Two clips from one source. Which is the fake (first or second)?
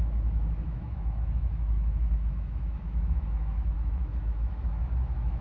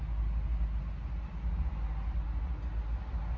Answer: first